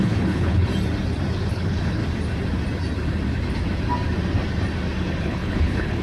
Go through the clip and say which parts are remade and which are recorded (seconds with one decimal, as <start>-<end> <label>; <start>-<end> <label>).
0.0-0.7 remade; 0.7-1.5 recorded; 1.5-2.0 remade; 2.0-5.2 recorded; 5.2-6.0 remade